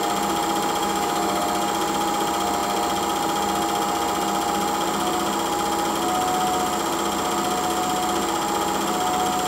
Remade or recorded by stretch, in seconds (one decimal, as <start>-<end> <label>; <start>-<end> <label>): 0.0-0.8 recorded; 0.8-1.4 remade; 1.4-9.5 recorded